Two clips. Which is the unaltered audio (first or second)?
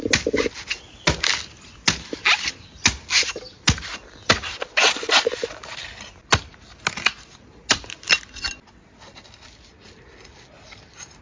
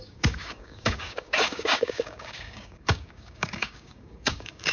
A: first